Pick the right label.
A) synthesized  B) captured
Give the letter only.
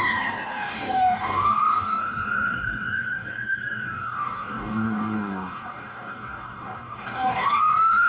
A